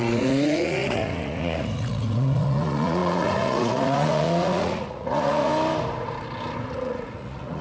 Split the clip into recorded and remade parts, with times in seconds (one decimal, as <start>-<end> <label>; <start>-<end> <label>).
0.0-5.5 remade; 5.5-6.7 recorded; 6.7-7.6 remade